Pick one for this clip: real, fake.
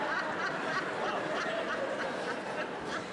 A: real